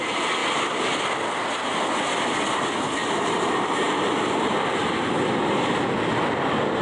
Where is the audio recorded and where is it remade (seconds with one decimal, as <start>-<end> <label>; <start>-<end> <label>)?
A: 0.0-6.8 recorded